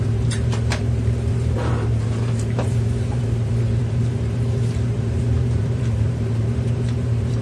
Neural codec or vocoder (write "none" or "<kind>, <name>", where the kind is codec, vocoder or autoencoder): vocoder, BigVGAN v2